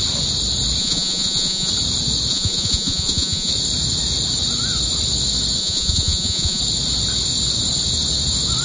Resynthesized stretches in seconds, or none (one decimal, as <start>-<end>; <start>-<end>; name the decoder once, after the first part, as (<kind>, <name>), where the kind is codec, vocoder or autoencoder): 0.8-1.7 (vocoder, Vocos); 2.3-3.5; 5.6-6.6